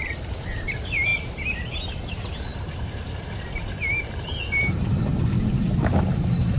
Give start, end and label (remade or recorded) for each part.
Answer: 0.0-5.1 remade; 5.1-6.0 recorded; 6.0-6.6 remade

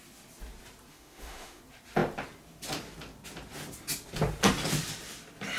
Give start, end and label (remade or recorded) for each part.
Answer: 0.0-0.9 recorded; 0.9-1.6 remade; 1.6-5.6 recorded

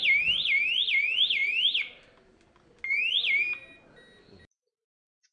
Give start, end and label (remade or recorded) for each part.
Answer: 0.0-5.3 recorded

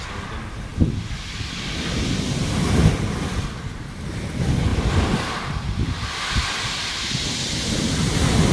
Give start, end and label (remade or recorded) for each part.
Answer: 0.0-4.7 recorded; 4.7-7.1 remade; 7.1-8.5 recorded